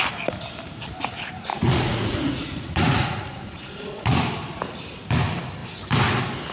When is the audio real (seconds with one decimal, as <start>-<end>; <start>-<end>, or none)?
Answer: 0.0-1.5; 4.2-6.5